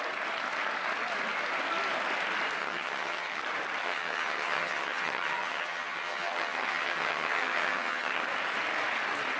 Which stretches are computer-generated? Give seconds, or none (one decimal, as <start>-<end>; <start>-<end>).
2.6-3.4; 3.8-8.2